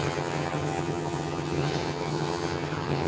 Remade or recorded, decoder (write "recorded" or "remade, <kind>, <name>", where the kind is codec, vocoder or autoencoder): remade, vocoder, HiFi-GAN